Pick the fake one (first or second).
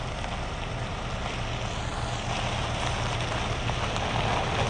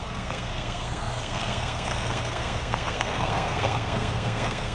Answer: second